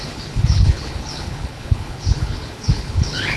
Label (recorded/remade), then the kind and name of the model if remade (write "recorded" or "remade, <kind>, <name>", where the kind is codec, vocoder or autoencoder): remade, codec, HILCodec